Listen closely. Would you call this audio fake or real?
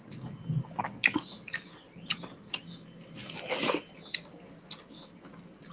real